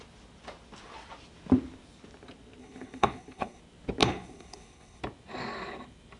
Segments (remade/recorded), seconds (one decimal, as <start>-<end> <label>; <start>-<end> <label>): 0.0-2.6 recorded; 2.6-3.6 remade; 3.6-4.0 recorded; 4.0-5.0 remade; 5.0-6.2 recorded